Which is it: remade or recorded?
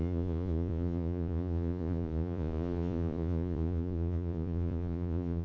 remade